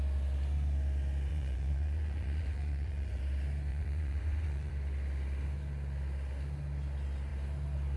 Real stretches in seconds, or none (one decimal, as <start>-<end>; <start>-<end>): 0.0-1.3; 3.2-3.7; 4.7-8.0